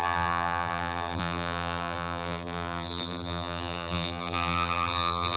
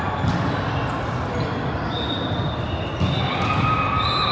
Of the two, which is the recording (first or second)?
second